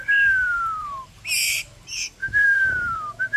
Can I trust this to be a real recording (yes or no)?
no